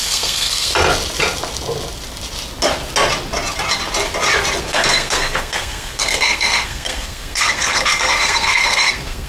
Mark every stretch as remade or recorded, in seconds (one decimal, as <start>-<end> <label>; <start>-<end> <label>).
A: 0.0-0.7 remade; 0.7-4.6 recorded; 4.6-9.3 remade

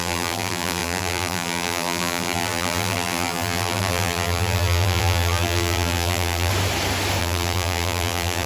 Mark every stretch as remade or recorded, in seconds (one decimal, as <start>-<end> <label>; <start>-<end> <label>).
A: 0.0-6.5 remade; 6.5-7.2 recorded; 7.2-8.5 remade

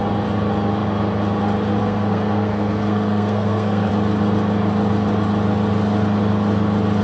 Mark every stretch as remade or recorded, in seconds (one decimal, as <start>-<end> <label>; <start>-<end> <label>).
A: 0.0-1.8 recorded; 1.8-3.9 remade; 3.9-7.0 recorded